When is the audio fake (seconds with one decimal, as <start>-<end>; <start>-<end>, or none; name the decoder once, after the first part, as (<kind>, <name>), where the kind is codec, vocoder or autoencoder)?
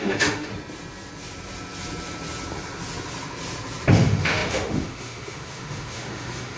0.0-0.5 (autoencoder, DAC-VAE); 3.9-6.6